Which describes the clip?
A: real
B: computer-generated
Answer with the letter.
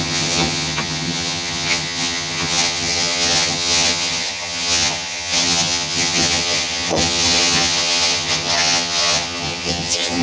B